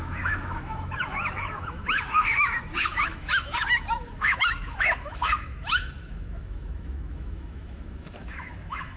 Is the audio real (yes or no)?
no